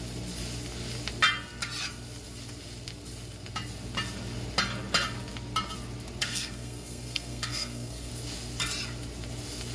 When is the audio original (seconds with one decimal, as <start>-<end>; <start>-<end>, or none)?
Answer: 0.0-6.2; 8.1-9.7